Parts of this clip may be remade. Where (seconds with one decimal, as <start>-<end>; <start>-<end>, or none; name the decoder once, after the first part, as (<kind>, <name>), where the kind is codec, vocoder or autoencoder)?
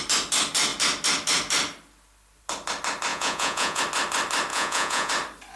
3.1-3.8 (vocoder, Vocos); 4.5-5.1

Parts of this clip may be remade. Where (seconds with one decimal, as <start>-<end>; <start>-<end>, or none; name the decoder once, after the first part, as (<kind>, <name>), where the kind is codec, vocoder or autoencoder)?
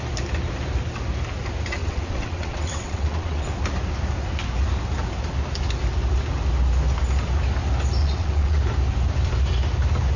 1.8-3.5 (vocoder, WaveNeXt); 8.0-8.6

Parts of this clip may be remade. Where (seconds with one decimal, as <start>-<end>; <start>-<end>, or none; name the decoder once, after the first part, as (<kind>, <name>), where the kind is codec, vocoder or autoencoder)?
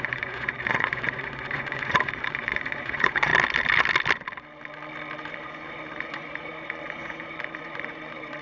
0.0-3.3 (vocoder, Vocos); 5.2-8.4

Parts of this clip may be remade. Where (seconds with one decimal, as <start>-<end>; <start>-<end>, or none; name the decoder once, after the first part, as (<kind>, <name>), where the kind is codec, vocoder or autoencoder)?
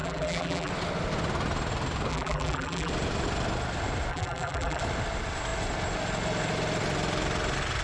0.0-0.7 (vocoder, BigVGAN v2); 2.1-2.9; 4.1-4.8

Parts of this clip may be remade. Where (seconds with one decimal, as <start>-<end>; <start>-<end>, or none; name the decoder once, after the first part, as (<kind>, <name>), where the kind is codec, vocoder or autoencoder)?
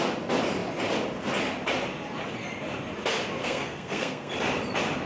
3.4-4.3 (codec, SNAC)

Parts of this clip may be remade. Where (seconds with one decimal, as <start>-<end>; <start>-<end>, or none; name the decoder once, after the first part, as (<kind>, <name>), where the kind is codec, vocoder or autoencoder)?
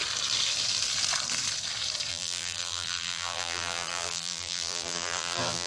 2.1-5.7 (vocoder, BigVGAN v2)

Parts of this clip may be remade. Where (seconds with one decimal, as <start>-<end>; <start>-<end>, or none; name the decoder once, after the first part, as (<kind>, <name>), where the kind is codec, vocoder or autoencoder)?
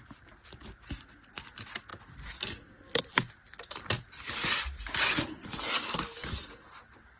none